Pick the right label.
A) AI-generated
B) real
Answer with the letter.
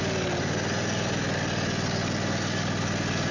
B